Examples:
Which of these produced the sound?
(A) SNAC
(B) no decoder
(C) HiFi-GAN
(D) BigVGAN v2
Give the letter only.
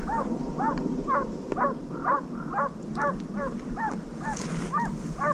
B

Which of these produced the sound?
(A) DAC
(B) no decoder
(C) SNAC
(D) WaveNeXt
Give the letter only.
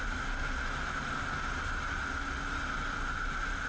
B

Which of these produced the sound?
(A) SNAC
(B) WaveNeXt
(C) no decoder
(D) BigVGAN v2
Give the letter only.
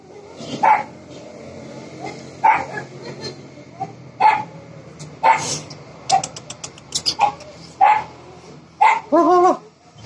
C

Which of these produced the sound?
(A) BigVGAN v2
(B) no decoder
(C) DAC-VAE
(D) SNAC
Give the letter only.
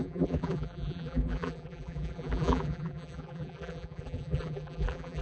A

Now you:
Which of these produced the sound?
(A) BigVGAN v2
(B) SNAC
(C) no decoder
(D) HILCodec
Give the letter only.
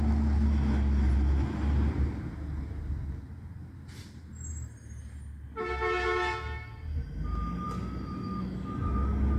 C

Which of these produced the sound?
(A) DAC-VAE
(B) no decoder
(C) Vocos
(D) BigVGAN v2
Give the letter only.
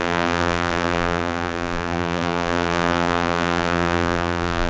D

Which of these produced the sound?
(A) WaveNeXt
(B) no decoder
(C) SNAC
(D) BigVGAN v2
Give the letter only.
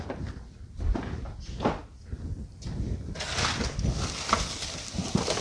B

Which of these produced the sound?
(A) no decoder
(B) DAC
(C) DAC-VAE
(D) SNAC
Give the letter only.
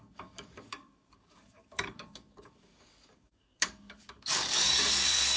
B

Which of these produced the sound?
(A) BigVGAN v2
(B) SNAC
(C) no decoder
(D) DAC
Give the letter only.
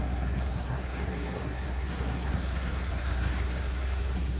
B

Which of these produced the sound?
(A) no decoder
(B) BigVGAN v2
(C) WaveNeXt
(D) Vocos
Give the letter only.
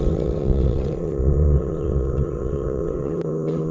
C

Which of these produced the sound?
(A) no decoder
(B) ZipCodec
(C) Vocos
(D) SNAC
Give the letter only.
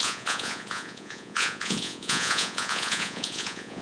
C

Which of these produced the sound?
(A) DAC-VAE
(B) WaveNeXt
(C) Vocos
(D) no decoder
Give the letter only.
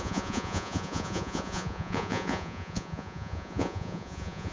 C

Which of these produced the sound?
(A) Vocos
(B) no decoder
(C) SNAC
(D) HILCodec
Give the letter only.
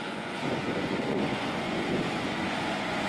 A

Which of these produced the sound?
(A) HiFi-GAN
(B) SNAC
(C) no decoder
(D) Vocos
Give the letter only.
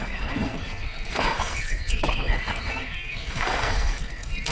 B